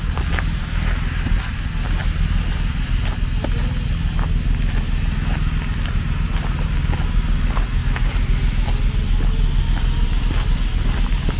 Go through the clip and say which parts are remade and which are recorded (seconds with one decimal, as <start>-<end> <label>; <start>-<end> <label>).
0.0-11.4 recorded